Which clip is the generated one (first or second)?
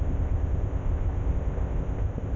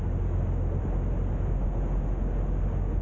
first